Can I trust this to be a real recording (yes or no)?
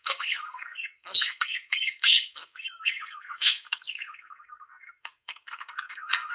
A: no